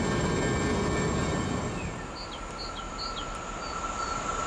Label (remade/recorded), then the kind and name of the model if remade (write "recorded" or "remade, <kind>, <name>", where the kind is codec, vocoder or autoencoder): recorded